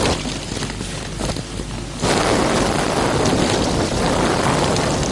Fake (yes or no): no